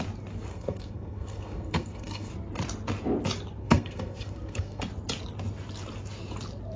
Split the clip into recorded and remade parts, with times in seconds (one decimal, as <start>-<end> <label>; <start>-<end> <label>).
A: 0.0-0.5 recorded; 0.5-2.3 remade; 2.3-3.6 recorded; 3.6-4.8 remade; 4.8-6.8 recorded